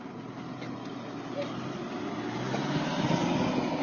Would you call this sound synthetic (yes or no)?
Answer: no